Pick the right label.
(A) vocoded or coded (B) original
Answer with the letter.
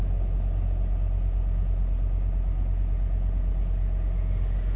B